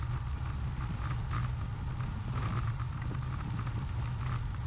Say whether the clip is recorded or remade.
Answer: recorded